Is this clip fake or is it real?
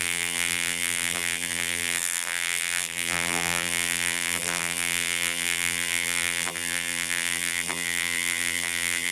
fake